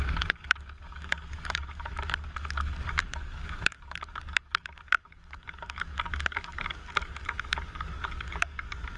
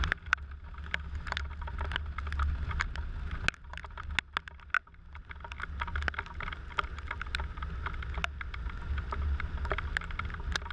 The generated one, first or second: first